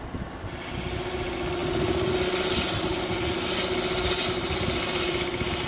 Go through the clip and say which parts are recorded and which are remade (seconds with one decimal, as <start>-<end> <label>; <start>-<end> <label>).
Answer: 0.0-5.7 recorded